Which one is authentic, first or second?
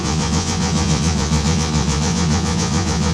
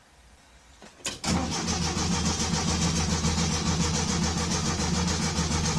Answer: second